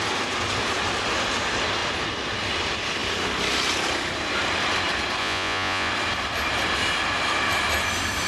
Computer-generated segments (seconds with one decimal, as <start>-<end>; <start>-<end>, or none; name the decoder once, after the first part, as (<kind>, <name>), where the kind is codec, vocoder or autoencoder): 5.2-5.9 (vocoder, Vocos)